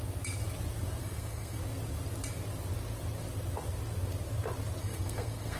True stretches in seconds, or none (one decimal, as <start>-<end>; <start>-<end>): 0.0-1.0; 1.6-4.8